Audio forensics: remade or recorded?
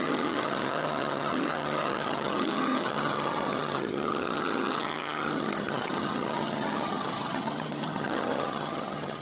remade